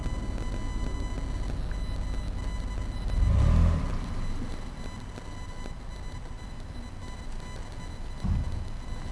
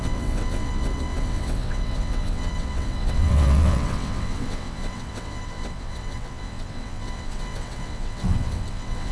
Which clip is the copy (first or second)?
second